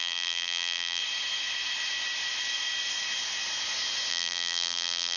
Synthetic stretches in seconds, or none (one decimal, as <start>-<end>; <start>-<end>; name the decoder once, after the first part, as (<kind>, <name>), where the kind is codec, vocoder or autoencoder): 0.0-1.0 (vocoder, BigVGAN v2); 4.1-5.2